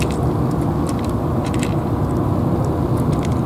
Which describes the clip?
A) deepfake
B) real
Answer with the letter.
B